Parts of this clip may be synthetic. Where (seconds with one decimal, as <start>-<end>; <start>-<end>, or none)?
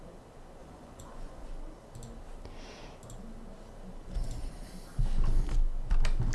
0.6-1.5